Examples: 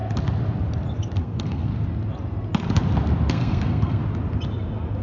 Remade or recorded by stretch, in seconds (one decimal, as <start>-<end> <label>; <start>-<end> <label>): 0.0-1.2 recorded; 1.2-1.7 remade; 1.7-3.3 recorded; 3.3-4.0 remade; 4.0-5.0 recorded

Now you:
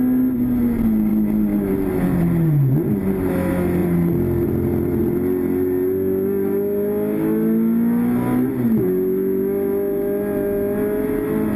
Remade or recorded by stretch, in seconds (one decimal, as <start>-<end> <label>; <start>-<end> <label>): 0.0-3.8 recorded; 3.8-4.5 remade; 4.5-11.6 recorded

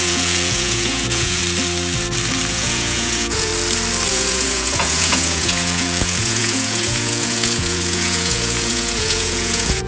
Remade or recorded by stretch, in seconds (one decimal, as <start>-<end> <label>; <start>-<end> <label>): 0.0-1.4 remade; 1.4-2.5 recorded; 2.5-3.5 remade; 3.5-4.1 recorded; 4.1-9.9 remade

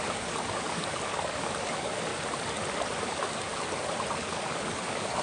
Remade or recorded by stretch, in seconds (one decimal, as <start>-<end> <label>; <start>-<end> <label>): 0.0-2.1 remade; 2.1-3.0 recorded; 3.0-3.5 remade; 3.5-4.2 recorded; 4.2-5.2 remade

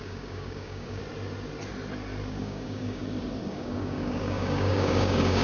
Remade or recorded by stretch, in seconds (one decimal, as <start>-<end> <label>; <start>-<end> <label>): 0.0-1.0 remade; 1.0-2.4 recorded; 2.4-3.0 remade; 3.0-3.5 recorded; 3.5-5.4 remade

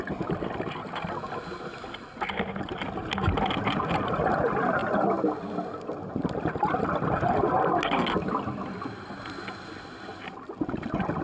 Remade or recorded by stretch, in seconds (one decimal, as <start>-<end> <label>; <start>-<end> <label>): 0.0-11.2 recorded

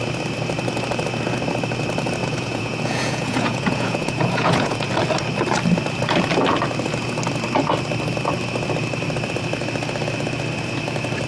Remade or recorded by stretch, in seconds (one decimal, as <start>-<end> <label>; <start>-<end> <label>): 0.0-2.2 recorded; 2.2-4.9 remade; 4.9-11.3 recorded

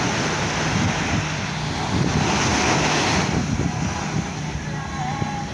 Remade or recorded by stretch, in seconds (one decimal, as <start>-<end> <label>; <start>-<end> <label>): 0.0-5.5 recorded